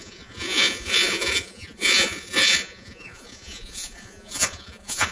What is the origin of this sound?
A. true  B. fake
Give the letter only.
B